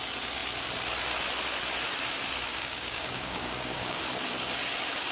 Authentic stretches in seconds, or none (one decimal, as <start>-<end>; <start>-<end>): 0.0-2.5; 4.0-5.1